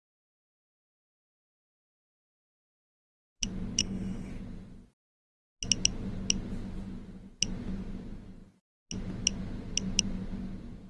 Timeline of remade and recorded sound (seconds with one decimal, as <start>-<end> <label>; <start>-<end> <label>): 0.0-3.8 recorded; 3.8-4.3 remade; 4.3-10.9 recorded